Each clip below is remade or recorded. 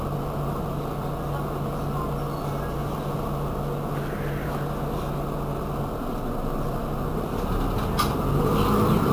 recorded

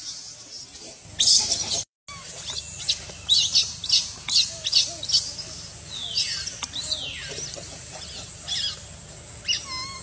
recorded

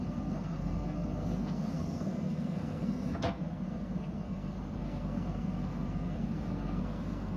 remade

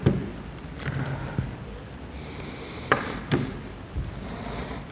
recorded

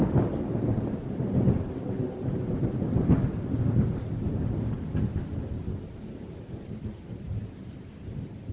recorded